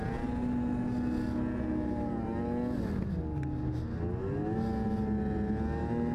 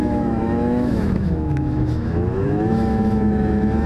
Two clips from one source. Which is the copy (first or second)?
second